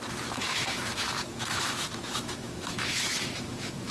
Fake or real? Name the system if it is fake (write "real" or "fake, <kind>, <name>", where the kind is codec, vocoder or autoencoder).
fake, autoencoder, DAC-VAE